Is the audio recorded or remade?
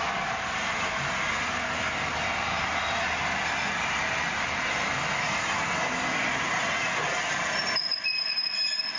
recorded